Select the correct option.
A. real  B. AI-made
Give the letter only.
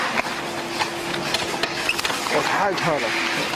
A